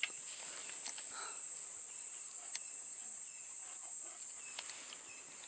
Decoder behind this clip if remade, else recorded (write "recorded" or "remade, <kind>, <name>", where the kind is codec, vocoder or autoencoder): recorded